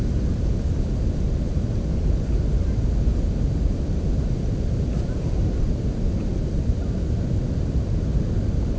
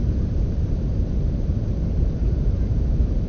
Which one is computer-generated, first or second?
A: second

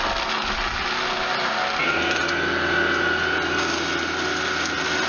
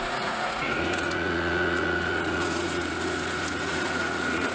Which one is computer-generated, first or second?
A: second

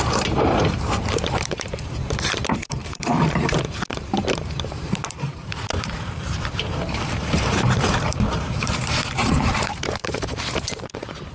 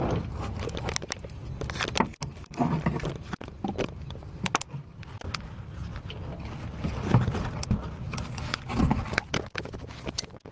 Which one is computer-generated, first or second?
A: first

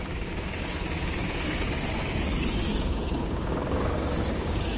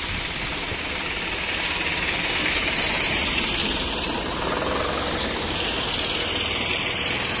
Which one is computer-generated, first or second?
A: first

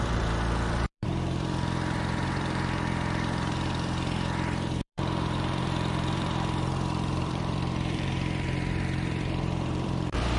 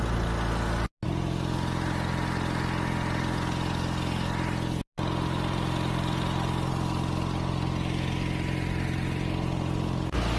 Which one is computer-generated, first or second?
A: first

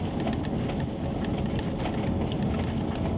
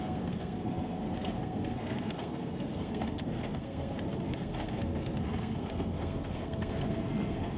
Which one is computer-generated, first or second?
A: second